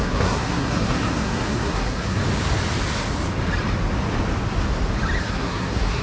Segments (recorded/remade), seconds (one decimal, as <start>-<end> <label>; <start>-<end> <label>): 0.0-2.2 remade; 2.2-5.2 recorded; 5.2-6.0 remade